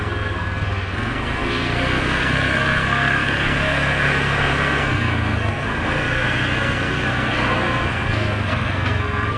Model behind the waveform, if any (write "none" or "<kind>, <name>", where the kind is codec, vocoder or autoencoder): codec, SNAC